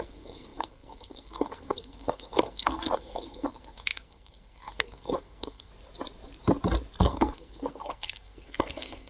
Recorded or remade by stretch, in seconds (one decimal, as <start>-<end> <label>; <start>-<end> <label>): 0.0-5.7 remade; 5.7-7.0 recorded; 7.0-9.1 remade